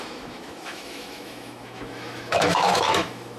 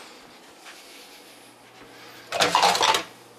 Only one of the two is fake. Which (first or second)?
first